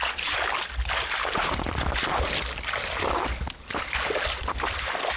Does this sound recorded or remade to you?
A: recorded